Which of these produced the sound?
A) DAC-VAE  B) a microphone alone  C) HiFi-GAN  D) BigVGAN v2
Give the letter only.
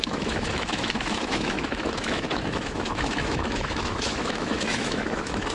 A